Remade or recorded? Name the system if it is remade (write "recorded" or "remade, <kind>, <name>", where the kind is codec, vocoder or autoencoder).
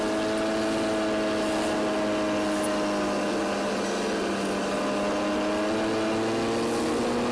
recorded